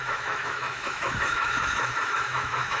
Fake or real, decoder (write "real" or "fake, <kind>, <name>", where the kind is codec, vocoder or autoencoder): fake, autoencoder, DAC-VAE